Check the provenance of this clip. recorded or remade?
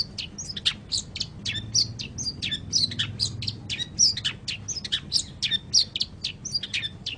recorded